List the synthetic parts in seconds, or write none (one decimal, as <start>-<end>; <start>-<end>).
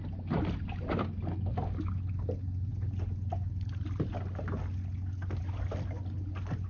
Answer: none